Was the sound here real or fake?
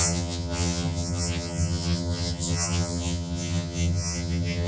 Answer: fake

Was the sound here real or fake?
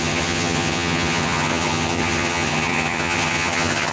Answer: fake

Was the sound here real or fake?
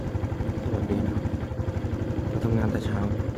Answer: real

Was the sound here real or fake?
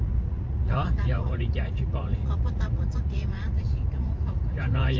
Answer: fake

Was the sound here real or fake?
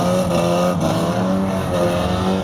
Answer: real